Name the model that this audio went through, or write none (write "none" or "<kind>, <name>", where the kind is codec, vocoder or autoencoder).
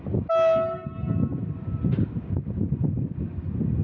none